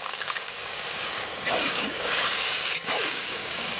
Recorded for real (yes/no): no